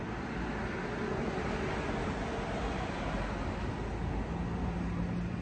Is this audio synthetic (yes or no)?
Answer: no